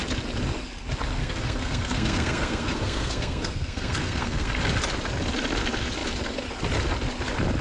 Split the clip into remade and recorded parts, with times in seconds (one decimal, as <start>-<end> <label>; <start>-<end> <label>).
0.0-1.2 recorded; 1.2-4.5 remade; 4.5-7.6 recorded